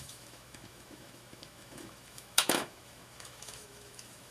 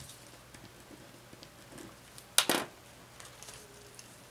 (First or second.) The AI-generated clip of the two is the first